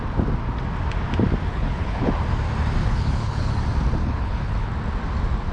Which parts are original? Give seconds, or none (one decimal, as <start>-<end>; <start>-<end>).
0.0-1.5; 2.1-2.8; 3.5-4.0; 4.7-5.5

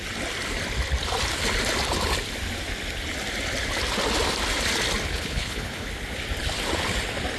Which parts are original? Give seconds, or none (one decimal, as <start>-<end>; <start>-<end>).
0.0-5.1; 5.9-7.4